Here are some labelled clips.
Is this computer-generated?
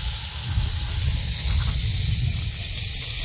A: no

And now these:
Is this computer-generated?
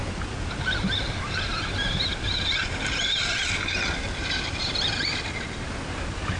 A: no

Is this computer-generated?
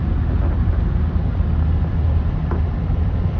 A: no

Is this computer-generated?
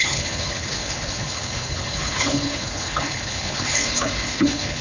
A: yes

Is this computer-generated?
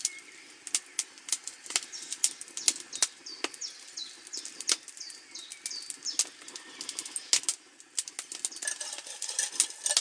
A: no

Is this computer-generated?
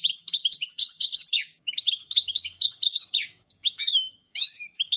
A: yes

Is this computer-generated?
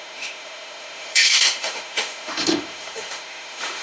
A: yes